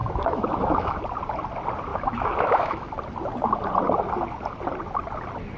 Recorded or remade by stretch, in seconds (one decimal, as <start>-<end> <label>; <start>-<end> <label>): 0.0-1.0 remade; 1.0-1.9 recorded; 1.9-2.9 remade; 2.9-5.6 recorded